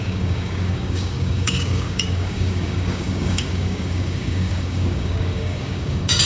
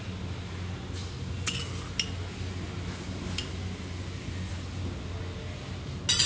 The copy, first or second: first